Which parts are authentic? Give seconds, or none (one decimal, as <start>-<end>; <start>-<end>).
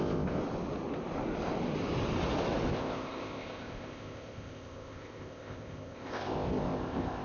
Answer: 0.4-2.7